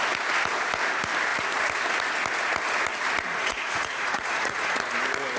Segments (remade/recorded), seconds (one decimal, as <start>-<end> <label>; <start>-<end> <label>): 0.0-3.3 recorded; 3.3-4.8 remade; 4.8-5.4 recorded